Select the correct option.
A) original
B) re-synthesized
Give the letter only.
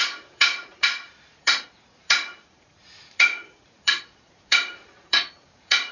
B